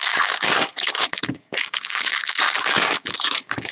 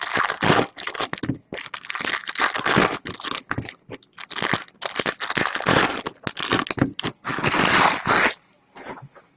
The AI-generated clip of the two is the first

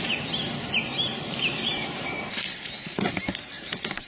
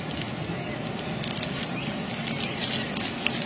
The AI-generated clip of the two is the first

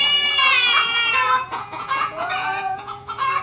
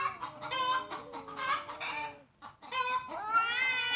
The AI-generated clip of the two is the first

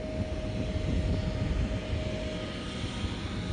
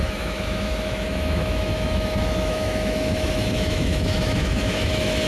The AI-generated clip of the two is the second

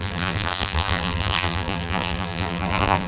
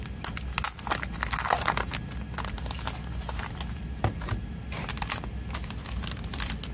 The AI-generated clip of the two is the first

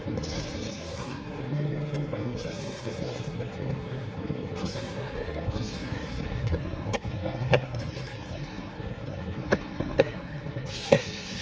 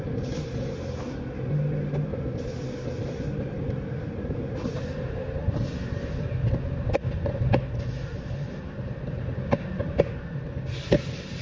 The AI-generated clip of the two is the first